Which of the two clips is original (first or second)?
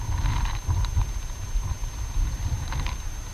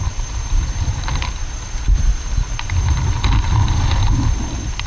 first